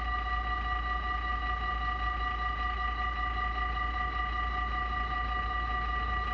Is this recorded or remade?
recorded